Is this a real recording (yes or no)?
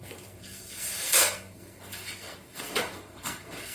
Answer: no